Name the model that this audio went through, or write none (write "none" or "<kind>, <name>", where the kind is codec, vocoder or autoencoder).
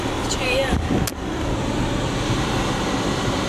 none